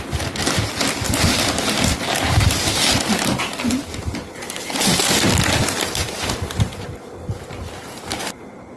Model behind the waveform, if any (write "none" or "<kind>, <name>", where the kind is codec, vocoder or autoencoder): none